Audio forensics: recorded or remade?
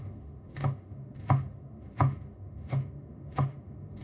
remade